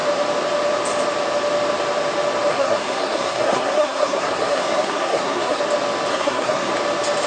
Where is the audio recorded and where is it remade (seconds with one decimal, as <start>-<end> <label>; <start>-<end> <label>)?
0.0-2.5 recorded; 2.5-5.6 remade; 5.6-6.1 recorded; 6.1-6.7 remade; 6.7-7.3 recorded